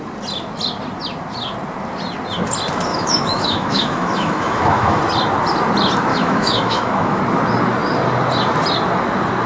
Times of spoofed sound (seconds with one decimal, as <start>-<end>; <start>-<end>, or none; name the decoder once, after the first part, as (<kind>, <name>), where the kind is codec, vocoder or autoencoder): 2.9-5.0 (autoencoder, DAC-VAE); 6.1-7.2